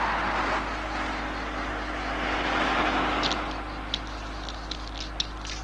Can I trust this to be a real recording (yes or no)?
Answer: yes